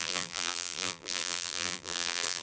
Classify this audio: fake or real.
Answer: fake